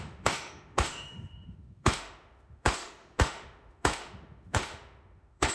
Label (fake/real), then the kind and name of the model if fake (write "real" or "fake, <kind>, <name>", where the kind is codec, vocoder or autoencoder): fake, autoencoder, DAC-VAE